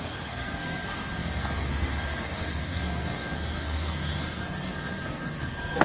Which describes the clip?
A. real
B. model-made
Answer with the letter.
B